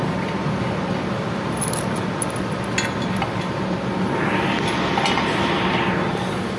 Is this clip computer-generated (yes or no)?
no